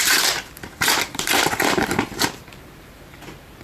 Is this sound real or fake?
fake